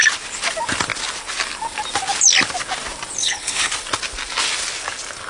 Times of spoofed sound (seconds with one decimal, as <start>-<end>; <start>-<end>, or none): 3.2-3.7